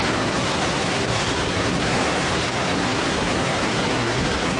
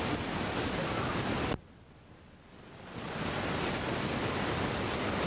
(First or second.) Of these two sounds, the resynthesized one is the first